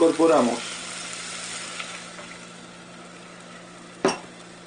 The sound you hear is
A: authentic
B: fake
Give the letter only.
A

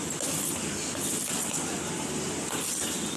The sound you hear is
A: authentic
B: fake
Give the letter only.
A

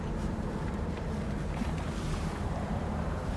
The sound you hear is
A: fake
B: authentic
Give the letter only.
A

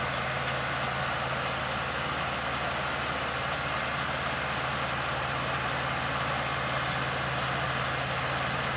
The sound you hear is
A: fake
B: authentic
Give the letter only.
B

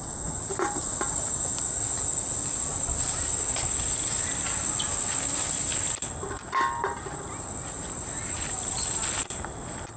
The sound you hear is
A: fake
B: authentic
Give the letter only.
B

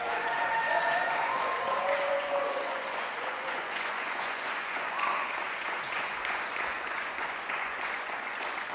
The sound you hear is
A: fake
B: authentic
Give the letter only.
A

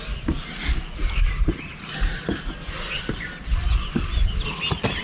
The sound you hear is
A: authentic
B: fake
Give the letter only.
A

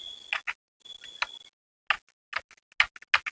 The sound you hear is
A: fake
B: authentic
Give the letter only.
B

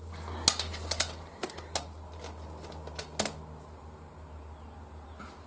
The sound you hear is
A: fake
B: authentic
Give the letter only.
B